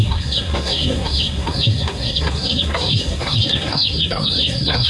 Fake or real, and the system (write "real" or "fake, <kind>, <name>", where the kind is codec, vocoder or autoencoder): fake, codec, SNAC